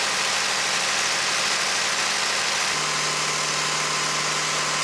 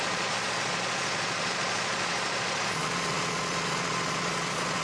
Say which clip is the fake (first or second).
second